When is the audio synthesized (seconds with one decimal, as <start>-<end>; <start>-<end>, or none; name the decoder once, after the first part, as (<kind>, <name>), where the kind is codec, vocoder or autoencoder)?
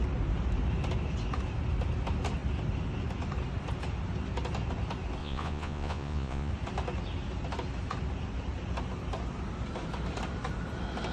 5.2-6.5 (vocoder, Vocos)